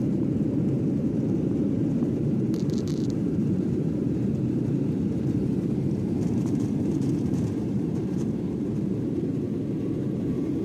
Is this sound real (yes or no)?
no